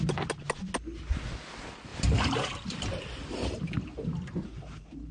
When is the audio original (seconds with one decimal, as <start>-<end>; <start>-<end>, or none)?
0.0-1.9

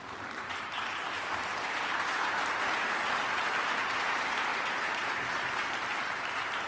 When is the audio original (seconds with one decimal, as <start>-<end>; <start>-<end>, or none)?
3.0-3.6

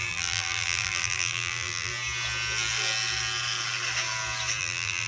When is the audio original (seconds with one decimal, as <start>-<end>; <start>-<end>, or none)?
1.9-4.6

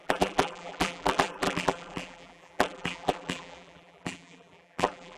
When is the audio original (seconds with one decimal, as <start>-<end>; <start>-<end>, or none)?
none

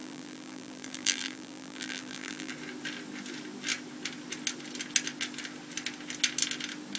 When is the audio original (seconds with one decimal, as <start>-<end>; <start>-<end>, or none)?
2.5-7.0

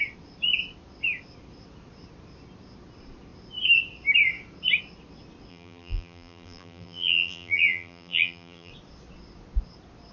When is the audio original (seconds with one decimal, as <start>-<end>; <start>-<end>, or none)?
0.0-5.5; 8.7-10.1